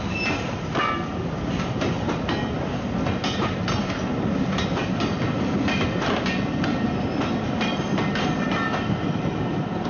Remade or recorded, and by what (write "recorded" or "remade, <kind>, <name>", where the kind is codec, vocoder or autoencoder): recorded